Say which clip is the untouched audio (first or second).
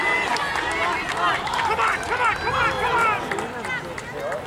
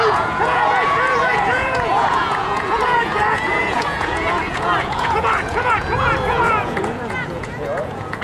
first